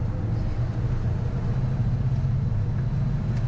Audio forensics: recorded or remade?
recorded